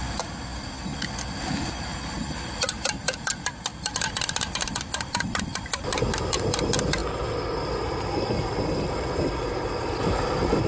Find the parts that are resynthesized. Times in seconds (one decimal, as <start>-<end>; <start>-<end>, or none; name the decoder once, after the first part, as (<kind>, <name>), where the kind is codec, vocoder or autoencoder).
none